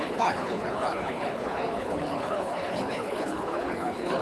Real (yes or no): no